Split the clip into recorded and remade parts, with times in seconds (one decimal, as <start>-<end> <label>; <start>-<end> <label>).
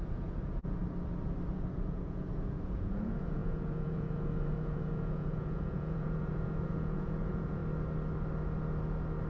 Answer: 0.0-0.8 remade; 0.8-1.5 recorded; 1.5-7.6 remade; 7.6-9.3 recorded